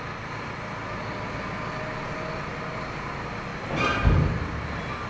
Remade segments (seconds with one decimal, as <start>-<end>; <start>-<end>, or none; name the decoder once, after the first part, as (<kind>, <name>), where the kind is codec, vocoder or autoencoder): none